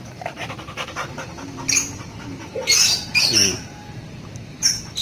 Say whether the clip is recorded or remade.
remade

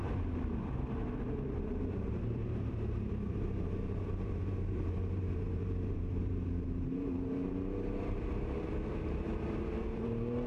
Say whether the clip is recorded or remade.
remade